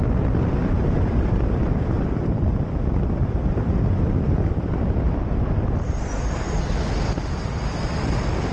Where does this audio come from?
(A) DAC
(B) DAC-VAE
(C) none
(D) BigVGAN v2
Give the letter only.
D